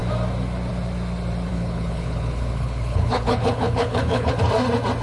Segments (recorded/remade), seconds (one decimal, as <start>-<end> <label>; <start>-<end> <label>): 0.0-1.5 recorded; 1.5-4.3 remade; 4.3-5.0 recorded